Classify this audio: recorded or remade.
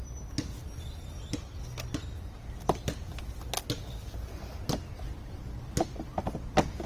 recorded